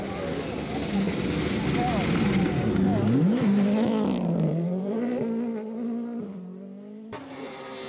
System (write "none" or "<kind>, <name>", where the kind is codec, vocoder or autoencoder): none